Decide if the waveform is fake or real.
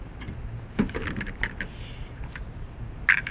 real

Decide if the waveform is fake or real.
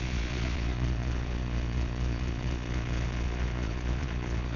fake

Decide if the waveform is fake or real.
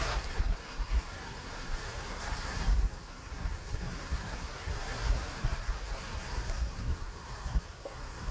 fake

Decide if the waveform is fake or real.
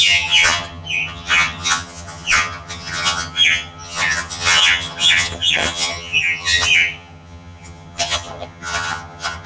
fake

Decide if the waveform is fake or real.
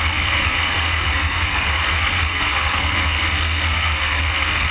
fake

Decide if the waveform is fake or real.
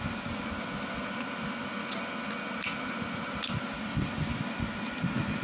real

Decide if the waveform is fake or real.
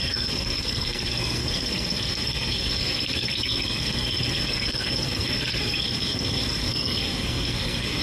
fake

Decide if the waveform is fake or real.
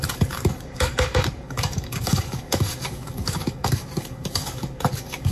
fake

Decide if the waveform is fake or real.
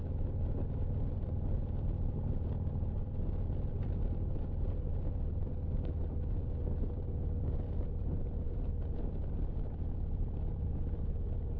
real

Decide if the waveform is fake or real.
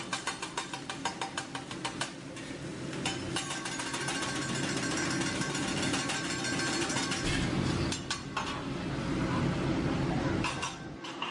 real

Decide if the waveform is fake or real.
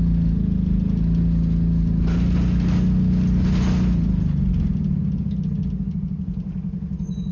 real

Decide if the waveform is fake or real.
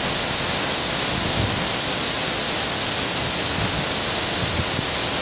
real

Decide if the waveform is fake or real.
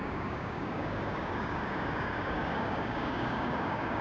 fake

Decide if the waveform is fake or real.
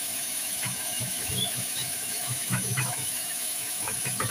fake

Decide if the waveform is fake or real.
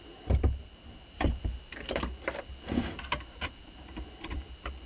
fake